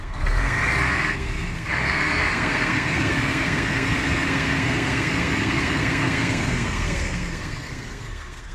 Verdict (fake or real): fake